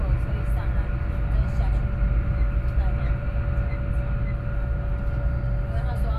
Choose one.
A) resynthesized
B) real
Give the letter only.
B